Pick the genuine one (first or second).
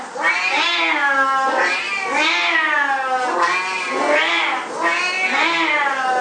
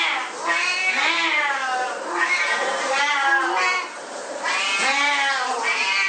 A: first